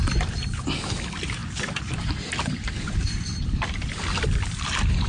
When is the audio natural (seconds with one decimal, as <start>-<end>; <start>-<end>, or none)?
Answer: 1.4-4.5